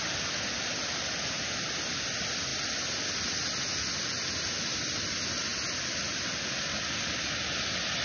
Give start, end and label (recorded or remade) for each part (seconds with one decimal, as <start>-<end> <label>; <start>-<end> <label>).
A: 0.0-8.0 recorded